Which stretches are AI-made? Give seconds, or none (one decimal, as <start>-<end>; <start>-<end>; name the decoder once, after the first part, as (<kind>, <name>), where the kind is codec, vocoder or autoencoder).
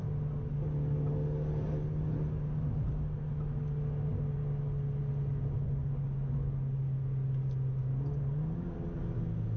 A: none